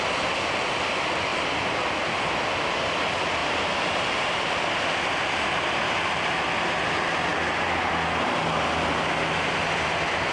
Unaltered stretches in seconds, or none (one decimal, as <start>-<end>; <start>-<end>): 0.0-1.3; 1.8-3.4; 4.4-10.3